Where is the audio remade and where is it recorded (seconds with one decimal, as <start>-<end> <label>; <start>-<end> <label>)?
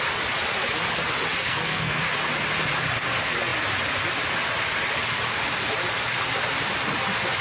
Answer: 0.0-1.4 recorded; 1.4-2.0 remade; 2.0-7.4 recorded